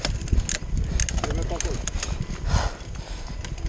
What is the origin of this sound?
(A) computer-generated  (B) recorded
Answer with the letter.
B